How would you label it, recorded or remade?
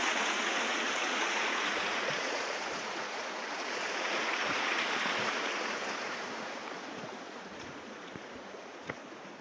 remade